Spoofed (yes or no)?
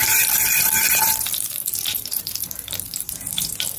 yes